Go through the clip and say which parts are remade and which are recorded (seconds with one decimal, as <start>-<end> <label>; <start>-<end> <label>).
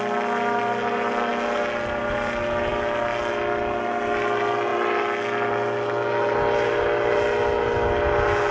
0.0-8.5 recorded